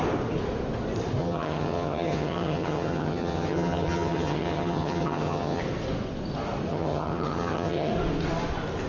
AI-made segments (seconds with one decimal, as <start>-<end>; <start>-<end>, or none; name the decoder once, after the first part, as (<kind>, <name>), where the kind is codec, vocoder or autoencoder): 1.2-5.6 (vocoder, HiFi-GAN); 6.7-7.9